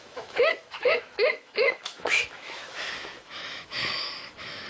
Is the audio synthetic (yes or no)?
yes